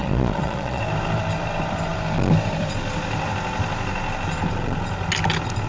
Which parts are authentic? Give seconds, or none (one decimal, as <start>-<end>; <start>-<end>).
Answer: 0.8-5.7